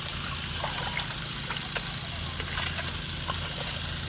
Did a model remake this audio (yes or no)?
no